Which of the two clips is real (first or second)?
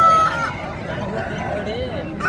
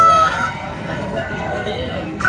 first